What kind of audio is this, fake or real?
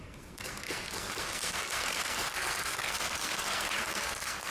fake